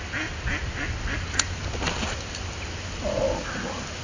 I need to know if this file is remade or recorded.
recorded